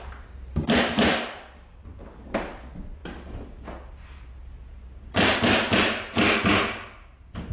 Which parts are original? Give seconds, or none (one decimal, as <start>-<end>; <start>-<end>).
0.0-7.5